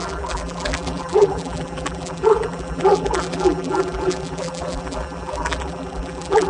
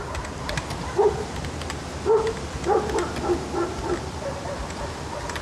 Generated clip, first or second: first